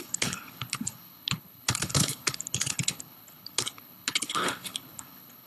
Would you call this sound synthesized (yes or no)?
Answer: yes